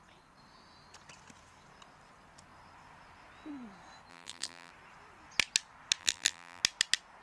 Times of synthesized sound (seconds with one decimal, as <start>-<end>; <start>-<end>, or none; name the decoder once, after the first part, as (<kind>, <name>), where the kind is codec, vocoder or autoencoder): 4.1-4.7 (vocoder, BigVGAN v2); 6.0-6.6